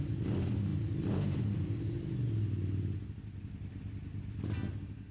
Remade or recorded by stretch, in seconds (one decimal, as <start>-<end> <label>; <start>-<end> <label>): 0.0-5.1 recorded